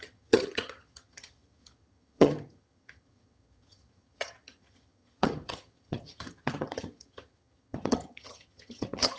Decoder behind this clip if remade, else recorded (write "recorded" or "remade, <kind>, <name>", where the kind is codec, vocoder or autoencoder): remade, vocoder, HiFi-GAN